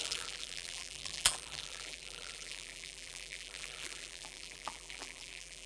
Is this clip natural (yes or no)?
no